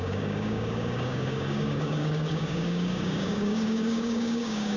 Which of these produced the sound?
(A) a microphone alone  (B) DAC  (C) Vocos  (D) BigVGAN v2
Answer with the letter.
B